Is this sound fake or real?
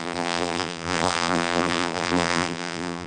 fake